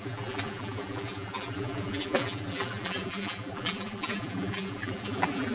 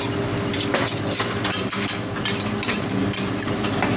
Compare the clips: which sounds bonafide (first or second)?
second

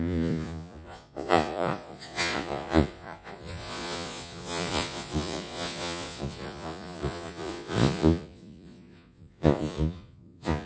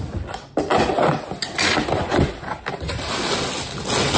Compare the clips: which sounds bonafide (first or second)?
second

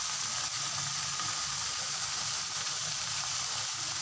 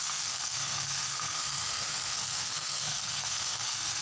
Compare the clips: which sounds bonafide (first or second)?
first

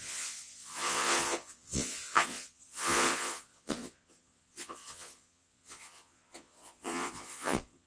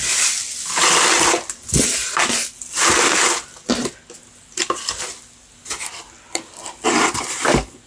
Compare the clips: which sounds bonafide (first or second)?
second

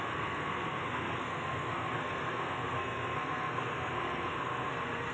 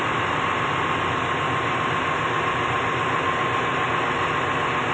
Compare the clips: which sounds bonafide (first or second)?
second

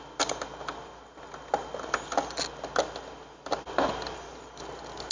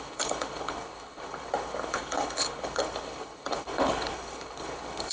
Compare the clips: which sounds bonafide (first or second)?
first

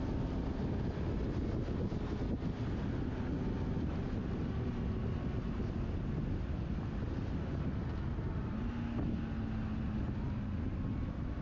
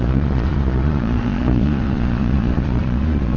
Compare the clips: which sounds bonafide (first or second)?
first